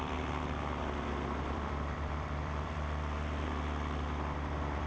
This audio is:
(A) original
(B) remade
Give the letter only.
B